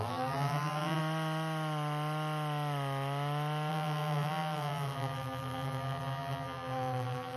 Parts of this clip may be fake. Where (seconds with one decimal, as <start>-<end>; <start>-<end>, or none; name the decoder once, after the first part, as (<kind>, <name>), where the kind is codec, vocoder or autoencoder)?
0.0-1.0 (vocoder, BigVGAN v2); 3.7-7.4